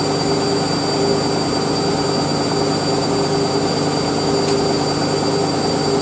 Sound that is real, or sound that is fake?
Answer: real